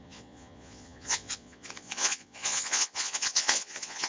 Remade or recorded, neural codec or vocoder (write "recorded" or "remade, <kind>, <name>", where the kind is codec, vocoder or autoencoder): remade, vocoder, Vocos